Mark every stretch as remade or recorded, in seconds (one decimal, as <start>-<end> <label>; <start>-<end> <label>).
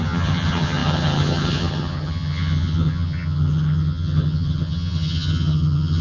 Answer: 0.0-6.0 remade